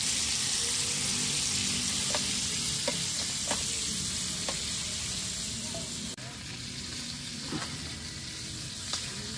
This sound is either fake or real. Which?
real